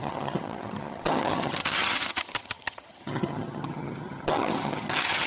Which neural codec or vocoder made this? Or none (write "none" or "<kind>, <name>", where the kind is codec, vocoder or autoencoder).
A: vocoder, HiFi-GAN